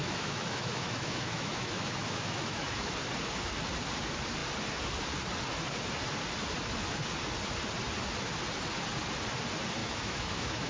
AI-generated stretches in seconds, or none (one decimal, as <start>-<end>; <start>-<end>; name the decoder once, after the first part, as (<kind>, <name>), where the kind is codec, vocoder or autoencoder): 0.0-2.9 (autoencoder, DAC-VAE); 9.8-10.7